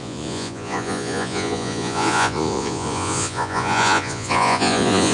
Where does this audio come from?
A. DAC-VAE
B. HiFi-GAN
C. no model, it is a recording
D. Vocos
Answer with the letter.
D